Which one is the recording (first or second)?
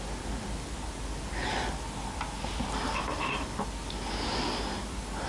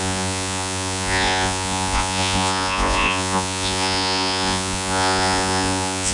first